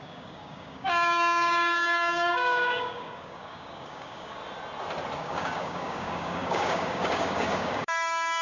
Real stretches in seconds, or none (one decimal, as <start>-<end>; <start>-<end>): 4.4-5.2